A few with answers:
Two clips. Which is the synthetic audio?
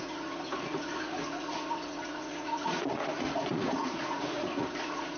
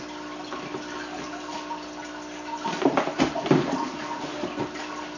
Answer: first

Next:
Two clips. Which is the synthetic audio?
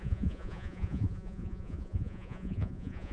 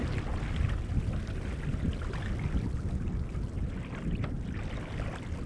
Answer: first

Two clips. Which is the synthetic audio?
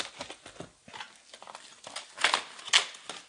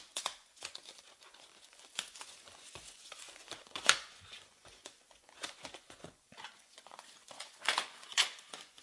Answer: second